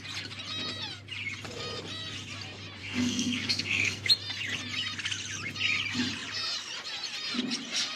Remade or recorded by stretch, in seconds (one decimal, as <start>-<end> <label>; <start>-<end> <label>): 0.0-2.8 recorded; 2.8-4.1 remade; 4.1-8.0 recorded